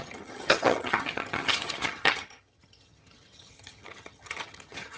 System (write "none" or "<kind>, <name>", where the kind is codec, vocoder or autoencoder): vocoder, HiFi-GAN